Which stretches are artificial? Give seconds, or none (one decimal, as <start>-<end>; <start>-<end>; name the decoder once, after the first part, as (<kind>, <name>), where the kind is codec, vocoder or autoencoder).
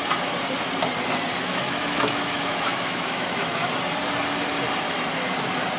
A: 1.5-3.7 (autoencoder, DAC-VAE)